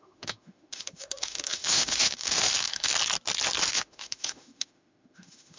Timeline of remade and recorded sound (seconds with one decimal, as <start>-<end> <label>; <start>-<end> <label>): 0.0-2.9 remade; 2.9-3.7 recorded; 3.7-5.6 remade